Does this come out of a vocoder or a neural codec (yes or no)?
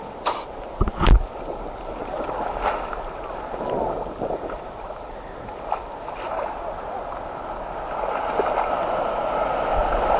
no